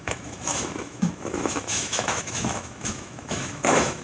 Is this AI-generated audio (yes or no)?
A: yes